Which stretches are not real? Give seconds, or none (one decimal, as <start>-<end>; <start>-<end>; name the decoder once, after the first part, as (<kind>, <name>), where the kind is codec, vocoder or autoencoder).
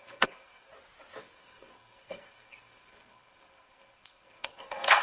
0.0-0.7 (codec, SNAC); 1.2-5.0